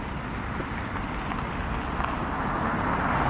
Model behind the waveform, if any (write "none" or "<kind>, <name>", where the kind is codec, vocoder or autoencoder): none